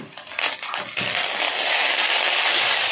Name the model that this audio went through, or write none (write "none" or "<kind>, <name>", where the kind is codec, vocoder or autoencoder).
none